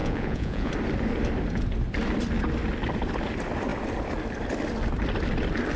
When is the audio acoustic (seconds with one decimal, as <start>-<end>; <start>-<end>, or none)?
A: 0.7-5.8